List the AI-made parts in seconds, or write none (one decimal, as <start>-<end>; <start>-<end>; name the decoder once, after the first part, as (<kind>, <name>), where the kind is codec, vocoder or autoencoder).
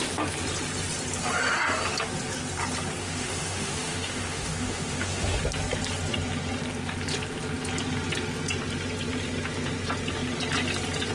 3.0-5.4 (autoencoder, DAC-VAE)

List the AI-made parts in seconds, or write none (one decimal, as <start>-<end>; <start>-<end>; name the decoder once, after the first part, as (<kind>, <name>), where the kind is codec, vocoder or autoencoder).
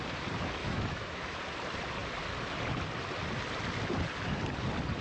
0.6-1.4 (autoencoder, DAC-VAE)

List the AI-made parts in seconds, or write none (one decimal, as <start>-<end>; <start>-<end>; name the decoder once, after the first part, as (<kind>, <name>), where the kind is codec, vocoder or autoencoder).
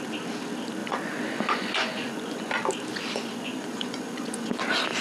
0.8-2.5 (vocoder, Vocos); 2.9-4.6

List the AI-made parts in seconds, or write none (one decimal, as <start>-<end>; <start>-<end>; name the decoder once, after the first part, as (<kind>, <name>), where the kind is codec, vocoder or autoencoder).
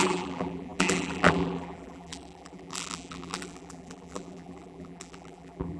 0.0-5.8 (vocoder, BigVGAN v2)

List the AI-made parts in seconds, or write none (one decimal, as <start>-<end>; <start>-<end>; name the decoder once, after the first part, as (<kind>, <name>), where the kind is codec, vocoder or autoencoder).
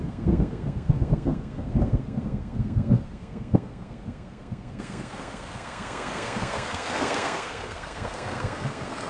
0.0-9.1 (codec, SNAC)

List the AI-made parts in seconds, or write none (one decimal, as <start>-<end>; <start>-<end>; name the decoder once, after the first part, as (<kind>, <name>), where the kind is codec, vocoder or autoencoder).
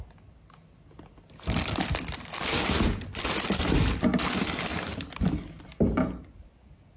none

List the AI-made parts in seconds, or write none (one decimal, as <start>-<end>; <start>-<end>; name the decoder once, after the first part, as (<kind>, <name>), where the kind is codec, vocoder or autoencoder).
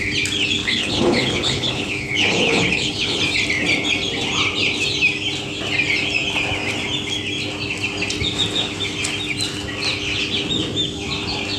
0.6-3.2 (codec, HILCodec)